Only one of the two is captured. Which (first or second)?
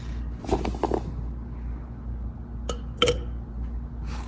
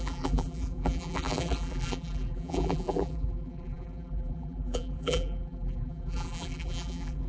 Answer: first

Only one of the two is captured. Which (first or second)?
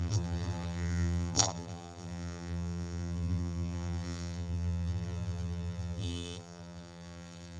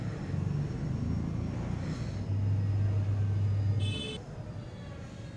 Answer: second